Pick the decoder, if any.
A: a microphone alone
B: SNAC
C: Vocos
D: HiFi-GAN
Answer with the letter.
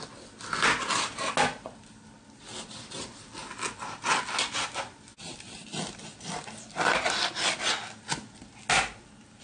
A